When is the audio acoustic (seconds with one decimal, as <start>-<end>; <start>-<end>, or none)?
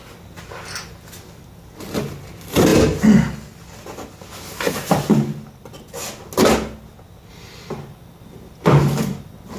0.0-9.6